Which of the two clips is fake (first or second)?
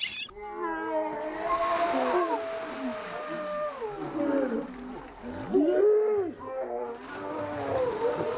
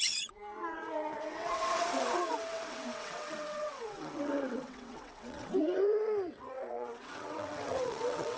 second